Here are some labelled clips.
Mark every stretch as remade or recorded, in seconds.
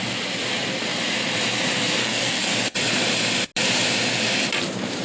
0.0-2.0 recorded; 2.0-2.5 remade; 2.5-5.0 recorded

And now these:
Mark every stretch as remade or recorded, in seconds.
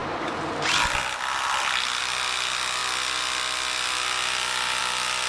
0.0-5.3 recorded